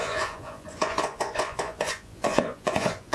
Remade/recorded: remade